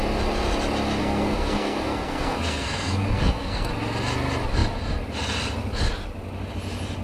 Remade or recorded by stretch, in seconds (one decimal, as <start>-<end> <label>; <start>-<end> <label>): 0.0-1.0 recorded; 1.0-3.7 remade; 3.7-7.0 recorded